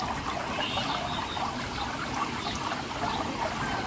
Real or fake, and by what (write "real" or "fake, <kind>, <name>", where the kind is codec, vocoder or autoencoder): real